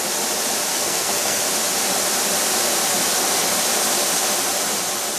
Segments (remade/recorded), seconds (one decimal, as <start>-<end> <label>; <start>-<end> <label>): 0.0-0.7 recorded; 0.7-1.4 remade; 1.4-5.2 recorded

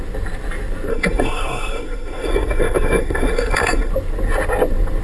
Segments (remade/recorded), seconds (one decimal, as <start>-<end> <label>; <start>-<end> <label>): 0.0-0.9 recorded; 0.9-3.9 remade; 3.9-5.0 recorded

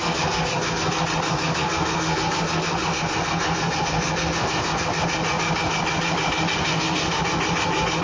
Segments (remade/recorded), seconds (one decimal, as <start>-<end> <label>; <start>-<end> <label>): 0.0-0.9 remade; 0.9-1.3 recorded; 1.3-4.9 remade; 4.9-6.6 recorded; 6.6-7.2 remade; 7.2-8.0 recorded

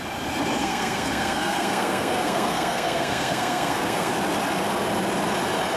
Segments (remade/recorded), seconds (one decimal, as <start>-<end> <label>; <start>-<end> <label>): 0.0-0.6 recorded; 0.6-4.1 remade; 4.1-5.8 recorded

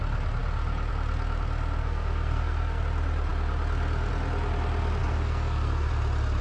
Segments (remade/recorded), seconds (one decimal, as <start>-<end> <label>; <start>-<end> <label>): 0.0-1.8 recorded; 1.8-2.8 remade; 2.8-5.0 recorded; 5.0-5.9 remade; 5.9-6.4 recorded

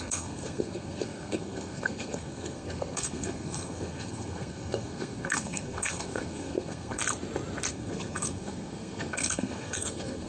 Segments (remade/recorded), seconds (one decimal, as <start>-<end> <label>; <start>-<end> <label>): 0.0-7.0 remade; 7.0-7.7 recorded; 7.7-10.3 remade